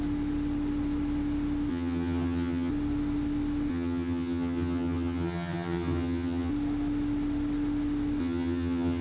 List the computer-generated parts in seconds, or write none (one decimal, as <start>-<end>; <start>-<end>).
1.7-2.7; 3.7-6.5; 8.2-9.0